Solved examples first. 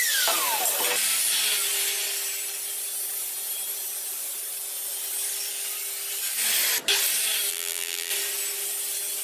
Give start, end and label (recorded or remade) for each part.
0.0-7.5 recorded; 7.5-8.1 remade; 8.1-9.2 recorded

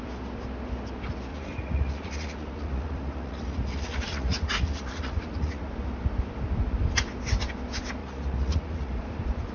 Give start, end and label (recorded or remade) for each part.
0.0-1.3 recorded; 1.3-5.7 remade; 5.7-8.0 recorded; 8.0-9.0 remade; 9.0-9.5 recorded

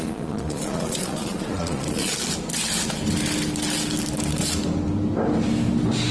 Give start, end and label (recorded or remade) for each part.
0.0-2.1 remade; 2.1-6.1 recorded

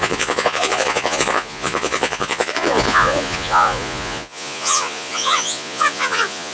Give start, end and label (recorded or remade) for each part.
0.0-6.5 remade

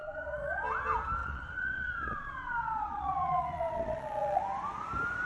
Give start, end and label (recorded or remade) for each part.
0.0-0.6 remade; 0.6-1.2 recorded; 1.2-4.4 remade; 4.4-5.3 recorded

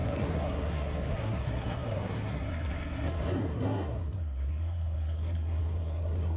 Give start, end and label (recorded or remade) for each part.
0.0-6.4 remade

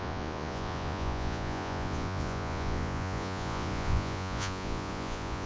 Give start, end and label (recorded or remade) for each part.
0.0-5.5 remade